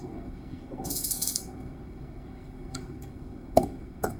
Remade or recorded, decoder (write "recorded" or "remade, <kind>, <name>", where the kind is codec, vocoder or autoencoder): remade, codec, SNAC